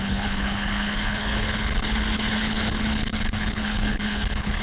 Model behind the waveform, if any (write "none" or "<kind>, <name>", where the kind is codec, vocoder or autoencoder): codec, HILCodec